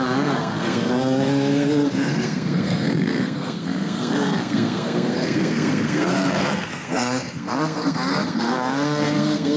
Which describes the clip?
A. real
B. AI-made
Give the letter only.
B